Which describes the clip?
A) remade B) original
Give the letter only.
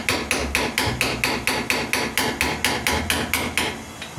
B